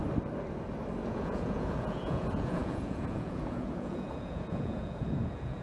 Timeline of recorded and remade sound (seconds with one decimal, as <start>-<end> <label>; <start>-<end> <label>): 0.0-1.1 recorded; 1.1-5.6 remade